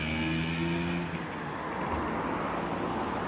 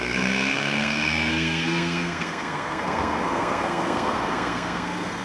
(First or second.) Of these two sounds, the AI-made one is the second